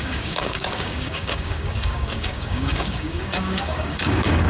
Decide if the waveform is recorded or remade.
remade